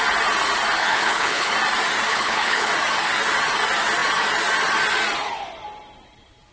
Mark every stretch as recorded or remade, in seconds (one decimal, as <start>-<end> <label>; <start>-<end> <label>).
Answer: 0.0-0.8 recorded; 0.8-1.5 remade; 1.5-2.1 recorded; 2.1-2.7 remade; 2.7-6.5 recorded

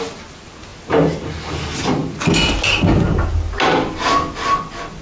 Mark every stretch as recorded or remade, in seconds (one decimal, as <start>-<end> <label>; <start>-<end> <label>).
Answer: 0.0-5.0 recorded

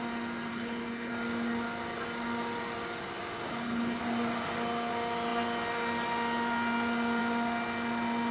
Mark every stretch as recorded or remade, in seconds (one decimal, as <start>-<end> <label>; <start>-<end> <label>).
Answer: 0.0-0.5 recorded; 0.5-1.1 remade; 1.1-3.5 recorded; 3.5-4.0 remade; 4.0-8.3 recorded